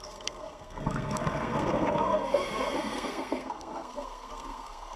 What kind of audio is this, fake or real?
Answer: fake